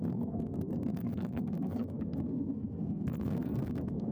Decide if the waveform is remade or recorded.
remade